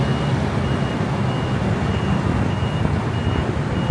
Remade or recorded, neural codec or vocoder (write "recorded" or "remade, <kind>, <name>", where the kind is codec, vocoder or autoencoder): recorded